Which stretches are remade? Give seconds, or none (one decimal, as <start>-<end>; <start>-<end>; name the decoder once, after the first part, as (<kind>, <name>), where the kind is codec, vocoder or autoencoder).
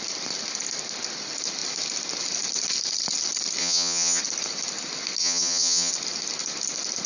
3.6-4.2 (vocoder, HiFi-GAN); 5.2-5.9